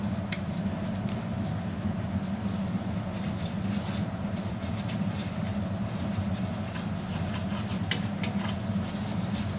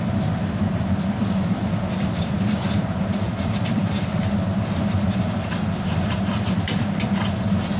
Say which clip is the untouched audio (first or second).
first